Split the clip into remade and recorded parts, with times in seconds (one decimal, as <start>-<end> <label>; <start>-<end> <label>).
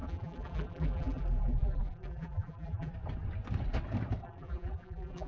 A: 0.0-2.9 remade; 2.9-4.2 recorded; 4.2-5.3 remade